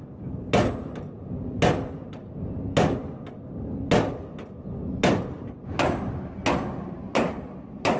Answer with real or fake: real